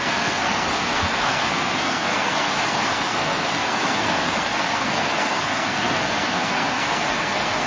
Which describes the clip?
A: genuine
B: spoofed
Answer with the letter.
B